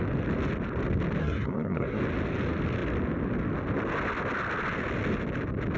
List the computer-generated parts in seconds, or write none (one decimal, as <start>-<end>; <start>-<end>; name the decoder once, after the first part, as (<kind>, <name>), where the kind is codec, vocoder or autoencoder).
1.2-2.0 (codec, SNAC)